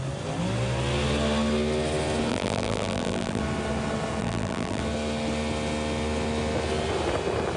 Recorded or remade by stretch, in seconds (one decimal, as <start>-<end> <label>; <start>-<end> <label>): 0.0-2.3 recorded; 2.3-3.4 remade; 3.4-4.2 recorded; 4.2-4.8 remade; 4.8-7.6 recorded